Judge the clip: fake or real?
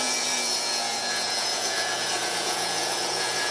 fake